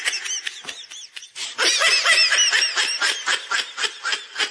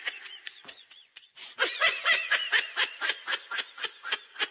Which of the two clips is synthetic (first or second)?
second